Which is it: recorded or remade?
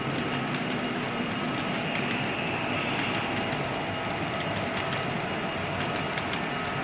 recorded